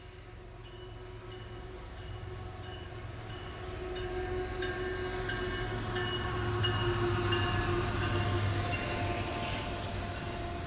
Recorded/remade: recorded